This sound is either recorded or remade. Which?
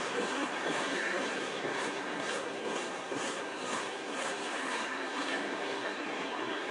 remade